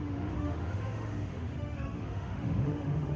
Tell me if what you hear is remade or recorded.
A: remade